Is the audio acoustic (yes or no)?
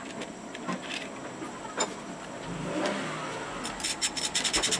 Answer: no